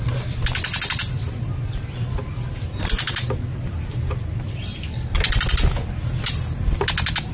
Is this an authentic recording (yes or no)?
yes